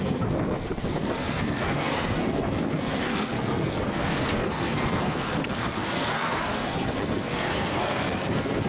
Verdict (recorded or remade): remade